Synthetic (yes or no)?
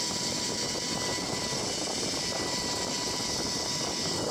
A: no